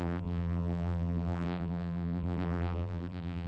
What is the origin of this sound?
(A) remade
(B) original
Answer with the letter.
A